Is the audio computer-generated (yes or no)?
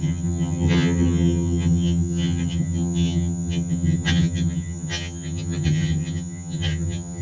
yes